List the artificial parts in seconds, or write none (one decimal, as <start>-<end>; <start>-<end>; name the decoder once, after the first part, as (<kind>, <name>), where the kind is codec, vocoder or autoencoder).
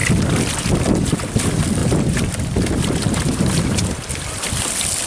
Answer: 1.8-3.5 (vocoder, BigVGAN v2)